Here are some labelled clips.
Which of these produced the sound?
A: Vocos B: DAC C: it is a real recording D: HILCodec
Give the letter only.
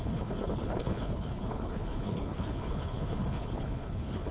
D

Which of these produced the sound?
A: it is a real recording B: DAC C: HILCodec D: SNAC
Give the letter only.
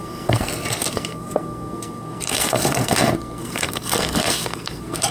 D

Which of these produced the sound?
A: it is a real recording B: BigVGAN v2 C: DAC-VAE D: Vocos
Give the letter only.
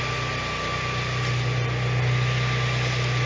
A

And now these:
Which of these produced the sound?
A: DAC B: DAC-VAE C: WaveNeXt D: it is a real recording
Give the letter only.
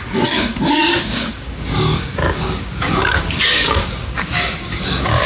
A